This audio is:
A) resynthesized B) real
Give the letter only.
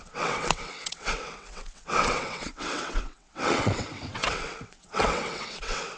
A